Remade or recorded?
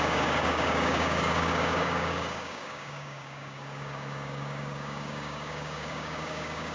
remade